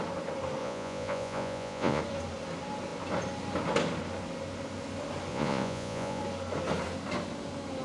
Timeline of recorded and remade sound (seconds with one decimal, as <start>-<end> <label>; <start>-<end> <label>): 0.0-0.6 recorded; 0.6-2.0 remade; 2.0-5.3 recorded; 5.3-6.2 remade; 6.2-7.8 recorded